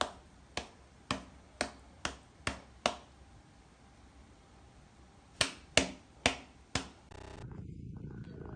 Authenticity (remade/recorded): recorded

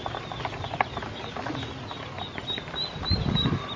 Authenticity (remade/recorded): recorded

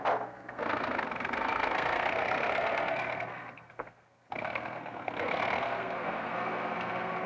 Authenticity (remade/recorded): remade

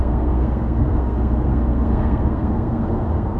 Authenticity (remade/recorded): remade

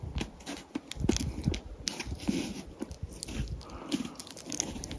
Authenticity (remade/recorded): recorded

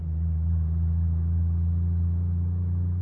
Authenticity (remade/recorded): recorded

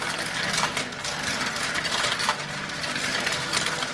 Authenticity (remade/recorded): recorded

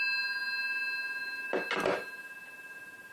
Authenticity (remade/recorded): recorded